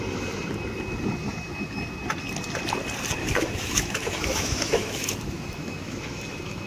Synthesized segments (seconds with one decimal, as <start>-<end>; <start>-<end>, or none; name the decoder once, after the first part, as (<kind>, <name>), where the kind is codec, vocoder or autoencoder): 3.2-6.7 (autoencoder, DAC-VAE)